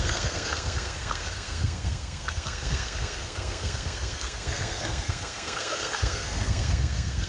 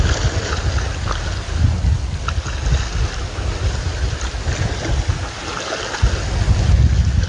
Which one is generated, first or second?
first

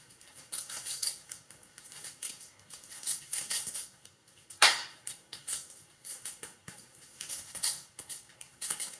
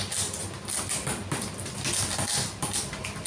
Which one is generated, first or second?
first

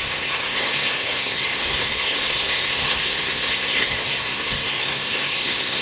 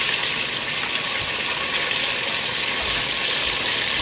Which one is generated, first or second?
first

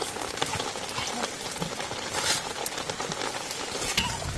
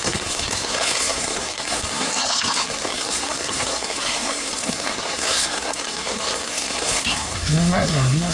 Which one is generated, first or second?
second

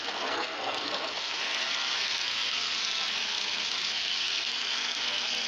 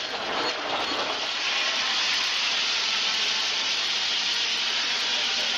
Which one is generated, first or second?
first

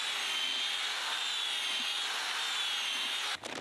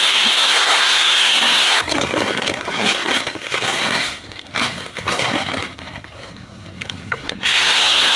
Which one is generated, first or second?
second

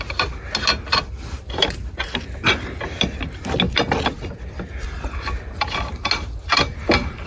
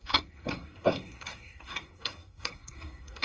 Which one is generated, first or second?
second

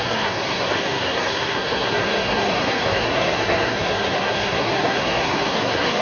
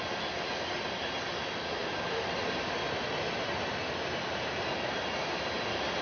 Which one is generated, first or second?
first